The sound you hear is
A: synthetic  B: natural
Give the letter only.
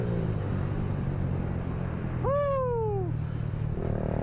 B